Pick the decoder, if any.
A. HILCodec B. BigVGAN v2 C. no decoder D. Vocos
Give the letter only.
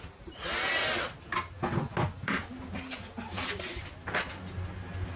C